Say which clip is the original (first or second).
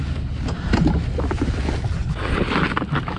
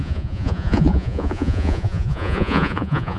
first